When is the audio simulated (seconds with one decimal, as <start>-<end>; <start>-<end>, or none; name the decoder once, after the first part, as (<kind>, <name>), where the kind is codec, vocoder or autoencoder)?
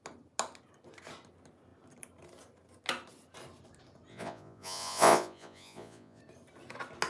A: 4.1-6.2 (vocoder, Vocos)